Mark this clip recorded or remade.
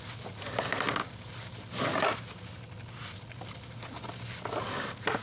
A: recorded